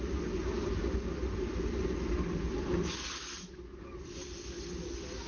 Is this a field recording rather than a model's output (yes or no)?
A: yes